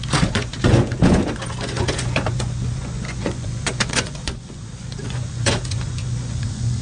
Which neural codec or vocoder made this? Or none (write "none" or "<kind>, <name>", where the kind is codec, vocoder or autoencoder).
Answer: vocoder, Vocos